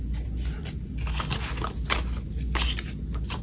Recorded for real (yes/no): yes